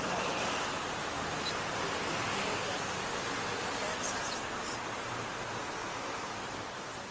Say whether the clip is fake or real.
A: real